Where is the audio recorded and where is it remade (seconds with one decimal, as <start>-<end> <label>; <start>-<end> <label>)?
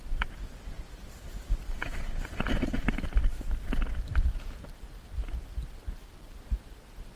0.0-7.2 remade